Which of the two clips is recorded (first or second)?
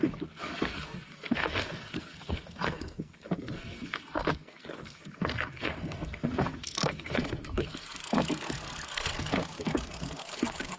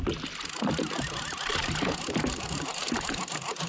second